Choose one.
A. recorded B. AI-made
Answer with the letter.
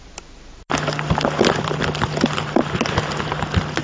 A